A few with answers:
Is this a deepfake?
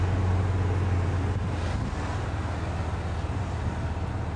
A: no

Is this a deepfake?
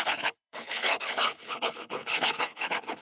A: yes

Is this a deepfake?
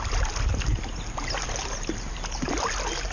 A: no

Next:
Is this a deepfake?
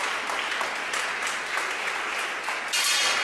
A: no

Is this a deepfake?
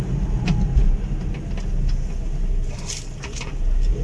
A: no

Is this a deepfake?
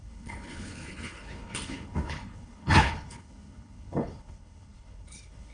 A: yes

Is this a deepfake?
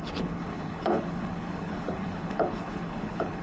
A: yes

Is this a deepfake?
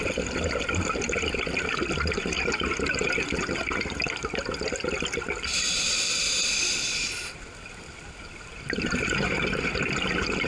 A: no